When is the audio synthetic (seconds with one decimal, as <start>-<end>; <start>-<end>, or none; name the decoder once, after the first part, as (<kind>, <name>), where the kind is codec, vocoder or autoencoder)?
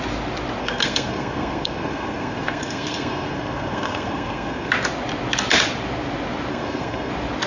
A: 0.6-4.7 (codec, SNAC); 6.5-7.1